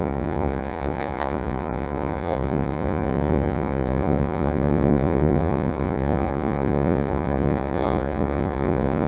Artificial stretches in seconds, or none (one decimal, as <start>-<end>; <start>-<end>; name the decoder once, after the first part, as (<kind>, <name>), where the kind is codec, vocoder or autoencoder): 0.0-9.1 (vocoder, Vocos)